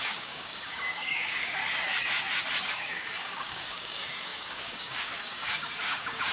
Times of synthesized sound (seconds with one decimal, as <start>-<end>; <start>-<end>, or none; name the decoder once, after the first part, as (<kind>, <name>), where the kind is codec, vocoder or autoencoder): 0.0-1.6 (codec, DAC); 2.6-6.3